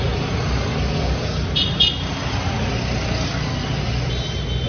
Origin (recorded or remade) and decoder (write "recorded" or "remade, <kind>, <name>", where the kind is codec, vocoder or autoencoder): recorded